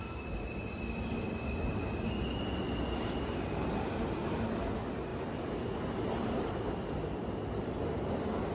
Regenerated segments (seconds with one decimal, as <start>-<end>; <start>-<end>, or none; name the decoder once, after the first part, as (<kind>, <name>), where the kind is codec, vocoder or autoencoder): 5.1-6.7 (vocoder, BigVGAN v2)